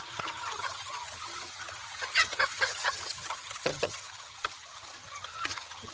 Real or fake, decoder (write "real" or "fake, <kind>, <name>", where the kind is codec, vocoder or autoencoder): fake, vocoder, HiFi-GAN